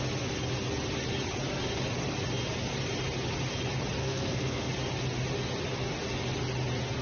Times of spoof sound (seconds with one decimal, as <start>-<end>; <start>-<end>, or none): 4.0-4.7